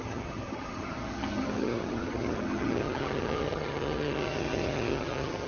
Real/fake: fake